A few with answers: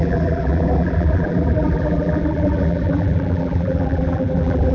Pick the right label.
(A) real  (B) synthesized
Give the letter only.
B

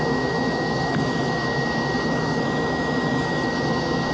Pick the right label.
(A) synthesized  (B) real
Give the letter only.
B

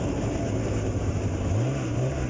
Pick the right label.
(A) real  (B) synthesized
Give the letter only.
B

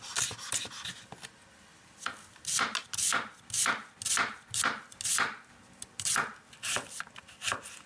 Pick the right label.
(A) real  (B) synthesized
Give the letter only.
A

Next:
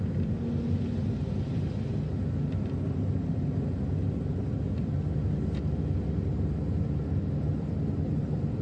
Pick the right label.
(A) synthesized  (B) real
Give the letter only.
B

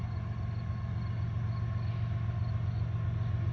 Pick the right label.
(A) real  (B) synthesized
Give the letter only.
A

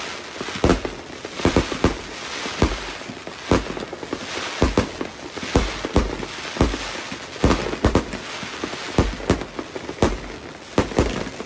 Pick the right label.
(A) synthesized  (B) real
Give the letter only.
B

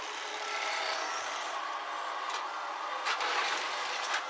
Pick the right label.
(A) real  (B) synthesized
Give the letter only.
A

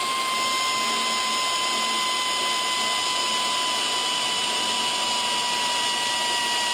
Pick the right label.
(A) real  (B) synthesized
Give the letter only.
A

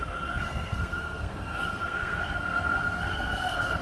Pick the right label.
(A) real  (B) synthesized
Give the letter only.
B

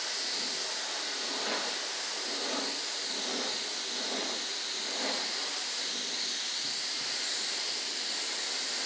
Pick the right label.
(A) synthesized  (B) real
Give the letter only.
B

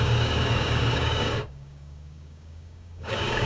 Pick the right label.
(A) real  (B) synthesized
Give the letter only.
B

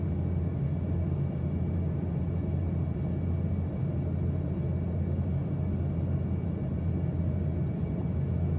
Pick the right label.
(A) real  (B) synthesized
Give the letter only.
A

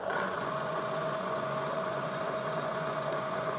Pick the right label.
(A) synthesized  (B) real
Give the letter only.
A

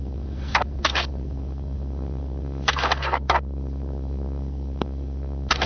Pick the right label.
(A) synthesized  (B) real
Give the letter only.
A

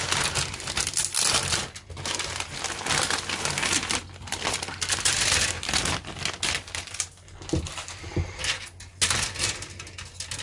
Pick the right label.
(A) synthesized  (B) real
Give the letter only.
B